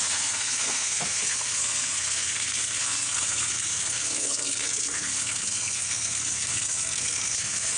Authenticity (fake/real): fake